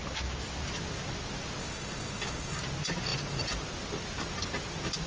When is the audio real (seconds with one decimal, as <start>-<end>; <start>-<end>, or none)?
0.0-1.6; 2.6-5.1